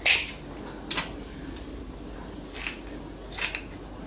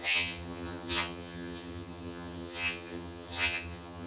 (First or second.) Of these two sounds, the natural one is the first